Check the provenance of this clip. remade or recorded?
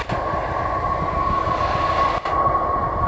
recorded